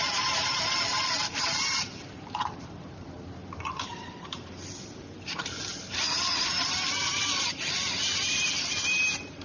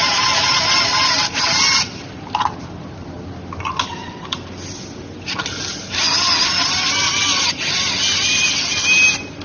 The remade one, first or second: first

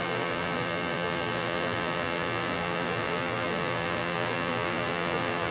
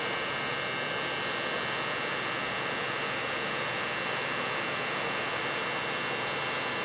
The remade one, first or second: first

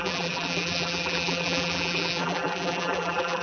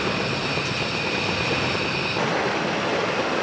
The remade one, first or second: first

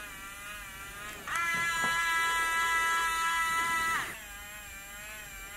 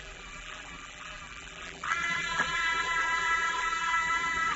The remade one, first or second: second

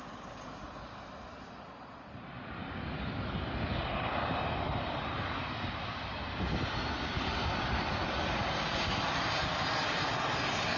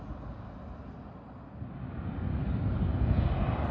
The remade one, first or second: first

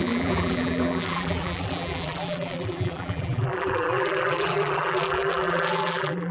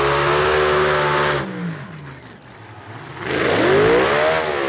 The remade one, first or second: first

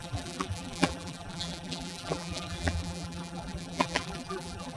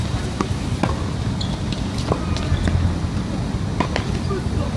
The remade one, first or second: first